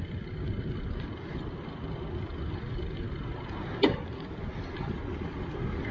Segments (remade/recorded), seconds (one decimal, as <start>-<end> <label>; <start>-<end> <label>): 0.0-5.9 recorded